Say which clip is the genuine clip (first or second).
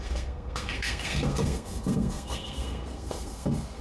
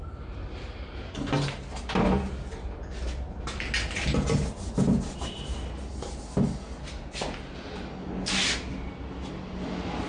second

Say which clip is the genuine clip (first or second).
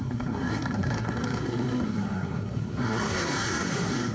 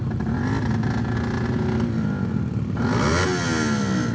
second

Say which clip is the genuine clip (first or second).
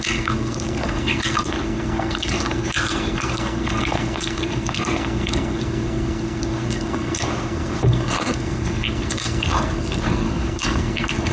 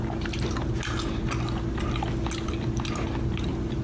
second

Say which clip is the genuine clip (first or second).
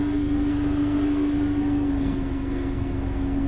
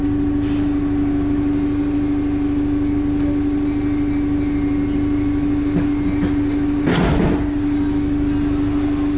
second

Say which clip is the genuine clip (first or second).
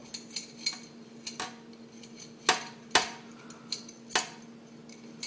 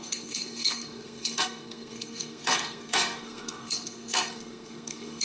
first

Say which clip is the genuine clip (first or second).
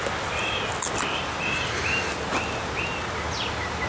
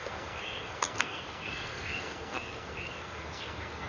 first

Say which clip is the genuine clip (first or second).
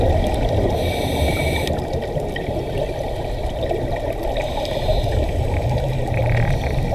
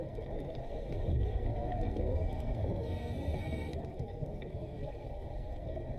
first